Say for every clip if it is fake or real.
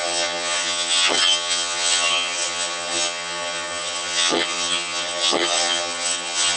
fake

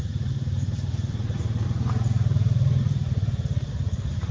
fake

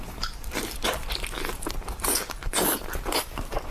real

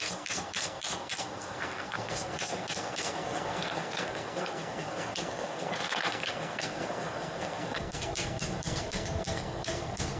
fake